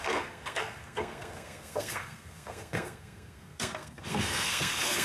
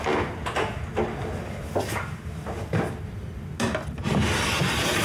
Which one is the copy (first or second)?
first